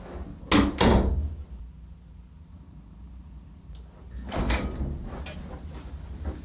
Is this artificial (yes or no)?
no